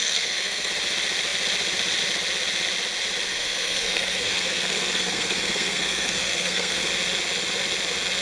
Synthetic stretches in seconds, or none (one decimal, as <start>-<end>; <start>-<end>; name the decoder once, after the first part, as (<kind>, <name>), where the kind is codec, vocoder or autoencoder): 0.0-0.7 (codec, SNAC); 3.3-6.9